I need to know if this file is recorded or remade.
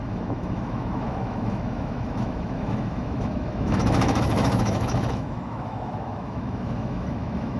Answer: remade